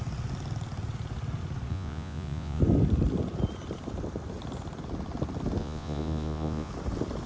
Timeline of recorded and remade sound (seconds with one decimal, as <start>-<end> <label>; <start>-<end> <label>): 0.0-1.7 recorded; 1.7-2.6 remade; 2.6-5.6 recorded; 5.6-6.7 remade; 6.7-7.3 recorded